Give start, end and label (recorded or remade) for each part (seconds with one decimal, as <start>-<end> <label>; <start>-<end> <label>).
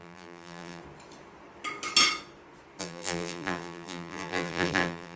0.0-0.8 remade; 0.8-2.8 recorded; 2.8-5.2 remade